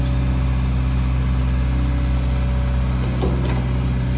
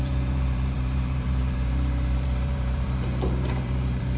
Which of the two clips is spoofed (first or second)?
second